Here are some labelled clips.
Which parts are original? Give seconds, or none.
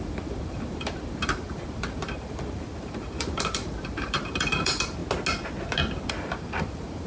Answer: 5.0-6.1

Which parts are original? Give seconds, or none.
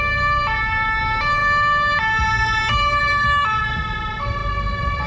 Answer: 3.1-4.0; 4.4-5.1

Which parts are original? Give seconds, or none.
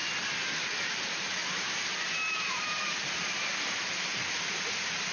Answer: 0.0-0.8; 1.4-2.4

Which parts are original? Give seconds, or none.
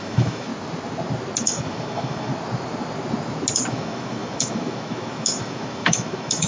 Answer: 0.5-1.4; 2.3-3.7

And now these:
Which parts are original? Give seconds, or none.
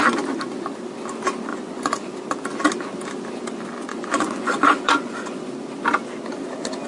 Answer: 0.0-1.5; 2.1-3.9; 5.5-6.9